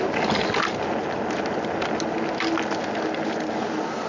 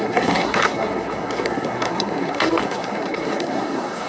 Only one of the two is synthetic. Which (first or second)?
second